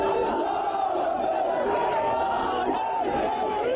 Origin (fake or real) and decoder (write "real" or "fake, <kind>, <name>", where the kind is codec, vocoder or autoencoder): fake, vocoder, BigVGAN v2